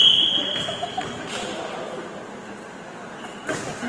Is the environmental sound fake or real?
real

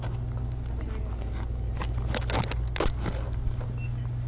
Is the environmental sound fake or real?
real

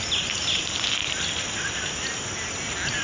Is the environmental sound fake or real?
real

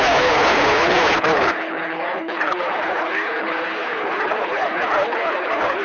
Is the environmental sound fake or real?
fake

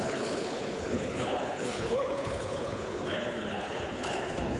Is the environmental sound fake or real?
fake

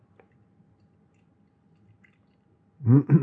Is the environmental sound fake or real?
real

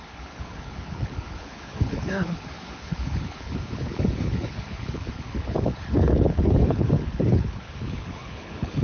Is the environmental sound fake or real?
fake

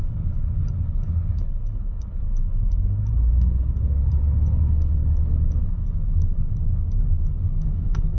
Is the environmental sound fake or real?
fake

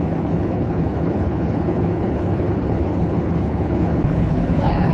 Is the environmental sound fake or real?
fake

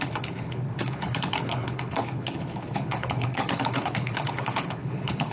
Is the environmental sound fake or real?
fake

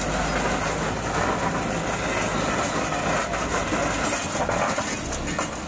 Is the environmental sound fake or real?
real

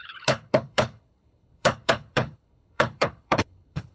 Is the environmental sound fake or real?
fake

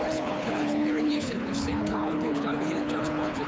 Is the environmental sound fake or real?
fake